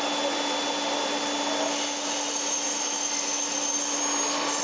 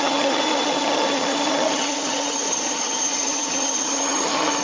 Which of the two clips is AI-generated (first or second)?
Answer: second